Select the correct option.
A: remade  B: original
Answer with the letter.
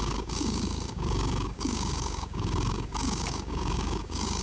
A